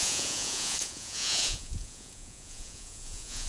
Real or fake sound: fake